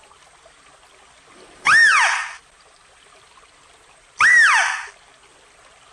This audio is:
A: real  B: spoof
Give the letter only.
A